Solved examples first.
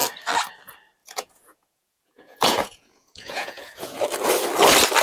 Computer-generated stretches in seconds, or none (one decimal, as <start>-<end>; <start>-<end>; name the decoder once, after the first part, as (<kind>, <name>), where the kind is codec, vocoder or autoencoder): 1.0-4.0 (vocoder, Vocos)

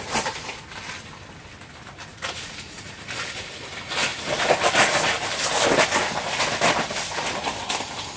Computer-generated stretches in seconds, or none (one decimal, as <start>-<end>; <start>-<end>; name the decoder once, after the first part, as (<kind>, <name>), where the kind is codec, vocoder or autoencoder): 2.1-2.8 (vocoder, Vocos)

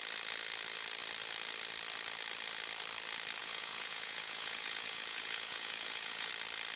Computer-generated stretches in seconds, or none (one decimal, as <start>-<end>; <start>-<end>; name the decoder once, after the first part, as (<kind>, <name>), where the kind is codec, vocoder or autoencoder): 3.4-6.3 (vocoder, Vocos)

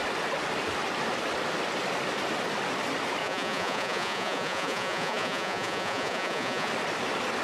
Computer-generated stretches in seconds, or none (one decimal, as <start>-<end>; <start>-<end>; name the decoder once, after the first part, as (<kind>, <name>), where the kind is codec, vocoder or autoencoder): 3.2-6.7 (vocoder, Vocos)